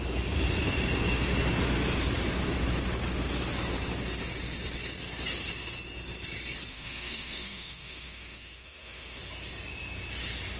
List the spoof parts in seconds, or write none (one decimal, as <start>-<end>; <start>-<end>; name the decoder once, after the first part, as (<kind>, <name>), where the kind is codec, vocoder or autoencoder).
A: 6.7-9.2 (autoencoder, DAC-VAE)